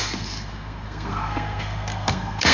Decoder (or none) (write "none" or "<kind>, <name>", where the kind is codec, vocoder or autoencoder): codec, SNAC